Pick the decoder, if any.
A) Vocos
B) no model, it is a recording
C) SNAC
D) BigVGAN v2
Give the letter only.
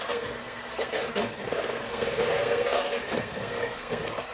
C